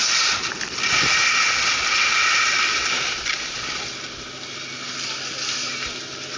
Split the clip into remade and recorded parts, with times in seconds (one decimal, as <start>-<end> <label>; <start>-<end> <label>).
0.0-6.4 recorded